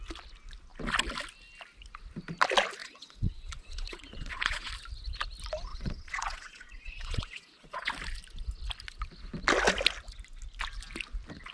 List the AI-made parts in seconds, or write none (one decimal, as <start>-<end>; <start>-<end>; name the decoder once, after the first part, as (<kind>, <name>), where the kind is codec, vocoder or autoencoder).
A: 2.8-4.7 (vocoder, Vocos); 5.7-7.9